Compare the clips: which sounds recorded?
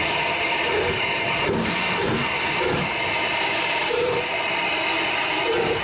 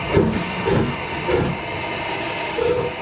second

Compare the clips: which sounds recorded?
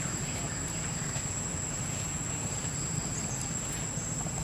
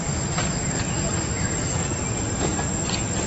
second